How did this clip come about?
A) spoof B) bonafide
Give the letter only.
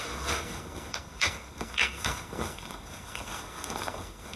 A